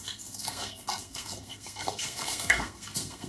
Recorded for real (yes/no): no